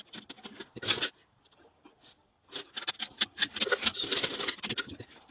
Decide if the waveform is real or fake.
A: real